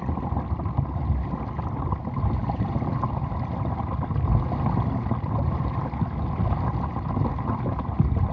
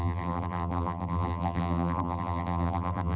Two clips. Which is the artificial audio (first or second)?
second